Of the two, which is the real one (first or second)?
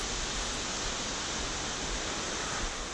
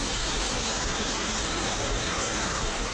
first